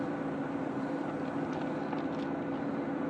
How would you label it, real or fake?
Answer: fake